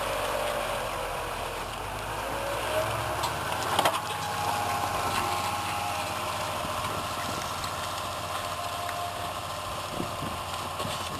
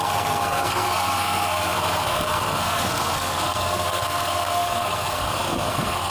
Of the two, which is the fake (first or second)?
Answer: second